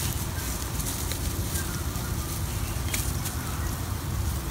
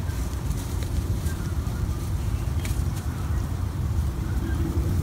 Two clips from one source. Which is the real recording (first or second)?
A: first